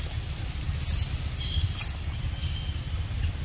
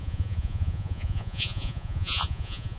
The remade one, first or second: second